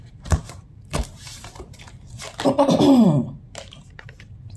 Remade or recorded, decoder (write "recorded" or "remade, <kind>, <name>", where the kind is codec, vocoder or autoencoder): remade, vocoder, BigVGAN v2